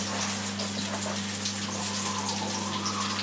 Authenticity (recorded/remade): recorded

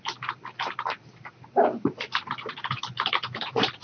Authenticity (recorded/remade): recorded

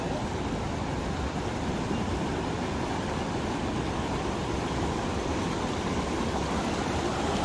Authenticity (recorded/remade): recorded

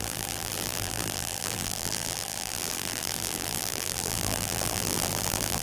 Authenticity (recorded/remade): remade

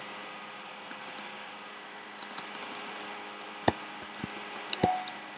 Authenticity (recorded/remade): recorded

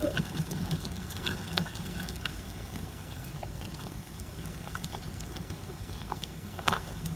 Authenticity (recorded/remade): remade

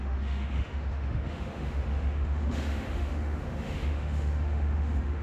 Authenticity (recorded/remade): remade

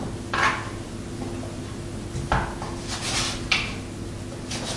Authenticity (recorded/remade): recorded